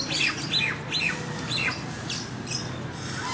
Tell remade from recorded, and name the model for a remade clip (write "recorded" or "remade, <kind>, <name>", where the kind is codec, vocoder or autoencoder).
recorded